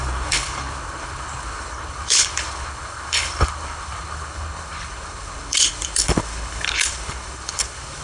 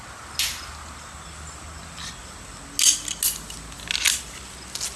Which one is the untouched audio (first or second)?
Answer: second